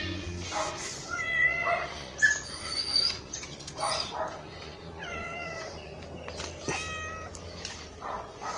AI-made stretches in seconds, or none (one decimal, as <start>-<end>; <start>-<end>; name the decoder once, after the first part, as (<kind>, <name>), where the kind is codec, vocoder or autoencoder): 0.0-5.9 (vocoder, Vocos); 7.9-8.6